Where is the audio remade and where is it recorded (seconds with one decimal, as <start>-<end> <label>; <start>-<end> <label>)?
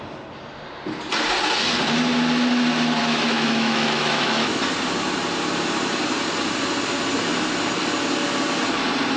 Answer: 0.0-3.0 recorded; 3.0-4.6 remade; 4.6-9.2 recorded